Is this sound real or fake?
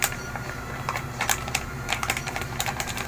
fake